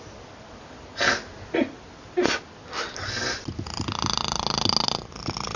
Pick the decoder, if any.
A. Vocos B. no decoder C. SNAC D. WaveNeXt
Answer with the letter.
B